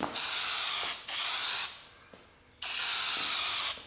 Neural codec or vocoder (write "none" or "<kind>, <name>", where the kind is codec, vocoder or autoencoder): none